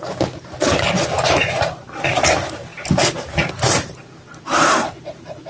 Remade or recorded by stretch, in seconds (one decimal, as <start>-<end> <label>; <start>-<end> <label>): 0.0-5.5 recorded